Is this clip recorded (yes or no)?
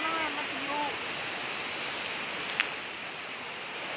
yes